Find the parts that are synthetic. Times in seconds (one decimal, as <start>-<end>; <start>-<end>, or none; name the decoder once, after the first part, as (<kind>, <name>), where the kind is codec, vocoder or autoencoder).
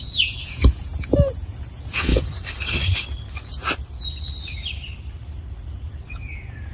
0.0-2.1 (vocoder, Vocos); 6.1-6.7